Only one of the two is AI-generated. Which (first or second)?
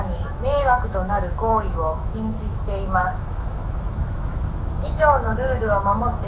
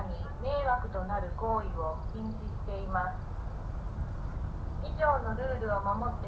first